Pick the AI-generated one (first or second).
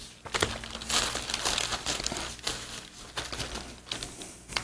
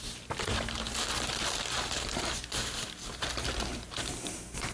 second